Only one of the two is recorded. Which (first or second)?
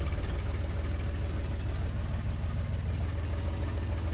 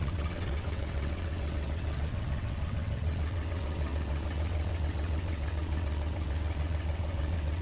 first